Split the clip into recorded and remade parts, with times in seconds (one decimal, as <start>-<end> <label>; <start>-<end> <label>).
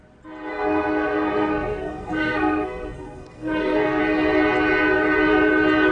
0.0-0.5 recorded; 0.5-4.0 remade; 4.0-5.9 recorded